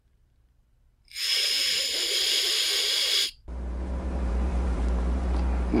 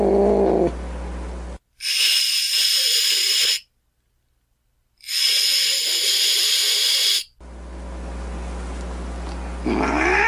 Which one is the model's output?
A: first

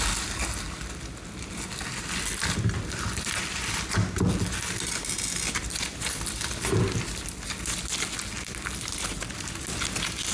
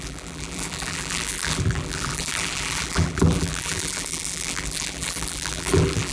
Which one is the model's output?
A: second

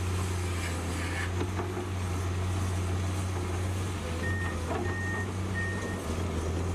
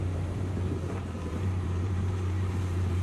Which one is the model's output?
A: second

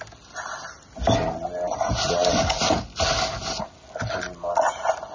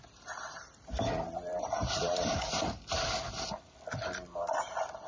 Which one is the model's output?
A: second